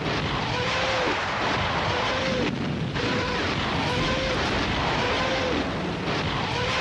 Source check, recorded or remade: remade